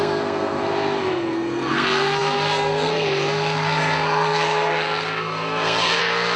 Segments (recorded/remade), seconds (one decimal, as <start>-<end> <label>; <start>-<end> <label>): 0.0-6.4 remade